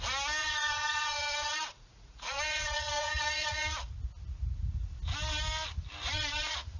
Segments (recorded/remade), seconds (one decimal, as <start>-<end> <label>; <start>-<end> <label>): 0.0-0.4 recorded; 0.4-3.9 remade; 3.9-6.1 recorded; 6.1-6.8 remade